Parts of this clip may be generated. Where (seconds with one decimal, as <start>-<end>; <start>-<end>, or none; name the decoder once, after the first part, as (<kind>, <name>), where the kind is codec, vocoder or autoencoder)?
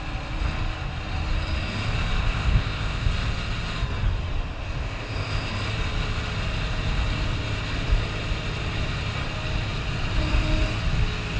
2.2-3.1 (codec, ZipCodec); 4.8-5.5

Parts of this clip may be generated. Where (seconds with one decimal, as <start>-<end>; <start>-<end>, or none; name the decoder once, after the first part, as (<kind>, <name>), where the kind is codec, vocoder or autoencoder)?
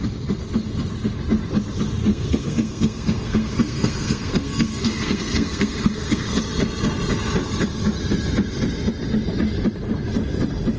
2.1-6.4 (codec, SNAC)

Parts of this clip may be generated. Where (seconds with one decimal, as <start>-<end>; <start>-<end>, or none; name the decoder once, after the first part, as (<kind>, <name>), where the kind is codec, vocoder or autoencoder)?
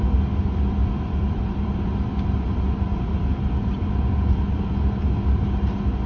0.8-3.9 (vocoder, BigVGAN v2)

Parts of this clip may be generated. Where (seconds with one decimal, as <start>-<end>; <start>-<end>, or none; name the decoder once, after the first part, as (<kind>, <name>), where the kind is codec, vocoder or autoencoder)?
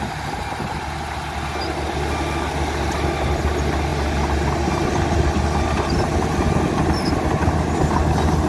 none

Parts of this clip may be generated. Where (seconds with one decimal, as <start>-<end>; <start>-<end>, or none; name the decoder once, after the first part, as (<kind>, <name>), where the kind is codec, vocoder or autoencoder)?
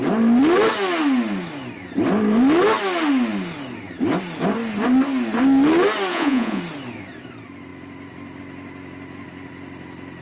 6.1-6.6 (vocoder, Vocos)